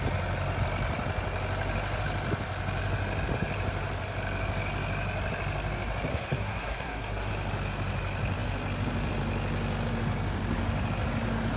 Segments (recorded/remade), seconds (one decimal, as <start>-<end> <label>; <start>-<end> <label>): 0.0-6.1 recorded; 6.1-7.3 remade; 7.3-11.6 recorded